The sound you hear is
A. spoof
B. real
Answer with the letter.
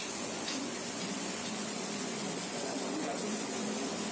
A